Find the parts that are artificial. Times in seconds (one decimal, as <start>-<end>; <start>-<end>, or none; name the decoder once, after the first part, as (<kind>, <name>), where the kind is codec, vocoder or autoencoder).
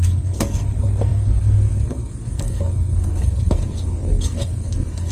0.0-5.1 (codec, SNAC)